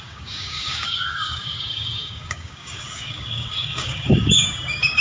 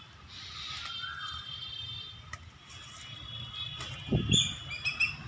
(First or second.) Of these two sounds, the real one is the second